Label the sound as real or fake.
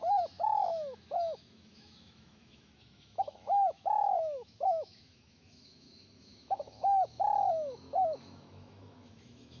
fake